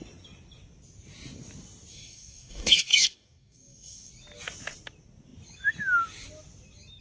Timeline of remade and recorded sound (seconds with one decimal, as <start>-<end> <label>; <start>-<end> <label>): 0.0-1.9 recorded; 1.9-4.1 remade; 4.1-7.0 recorded